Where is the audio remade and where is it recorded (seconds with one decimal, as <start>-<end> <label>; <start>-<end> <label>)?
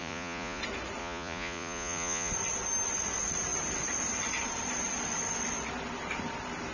0.0-0.6 remade; 0.6-1.0 recorded; 1.0-2.3 remade; 2.3-6.7 recorded